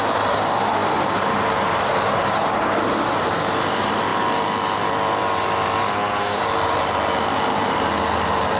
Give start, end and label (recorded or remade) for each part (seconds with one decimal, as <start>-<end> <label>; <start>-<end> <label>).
0.0-4.1 recorded; 4.1-5.8 remade; 5.8-8.6 recorded